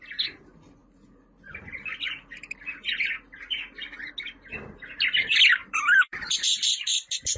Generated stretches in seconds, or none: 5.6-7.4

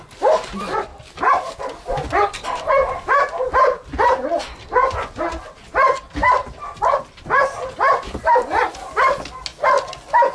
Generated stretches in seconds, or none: 2.4-3.5; 6.2-7.0

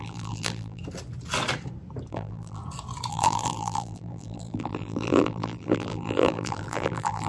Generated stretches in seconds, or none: 0.0-0.8; 2.1-2.6; 3.1-7.3